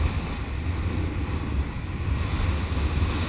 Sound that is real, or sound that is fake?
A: real